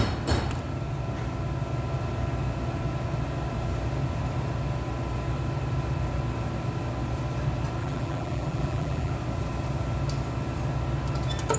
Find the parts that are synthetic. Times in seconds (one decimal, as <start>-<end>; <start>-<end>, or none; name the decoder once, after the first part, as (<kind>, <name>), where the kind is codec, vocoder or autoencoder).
7.8-9.1 (vocoder, BigVGAN v2)